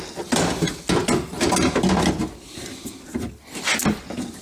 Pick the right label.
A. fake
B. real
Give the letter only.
B